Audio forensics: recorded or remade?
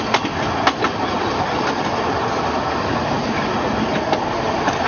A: recorded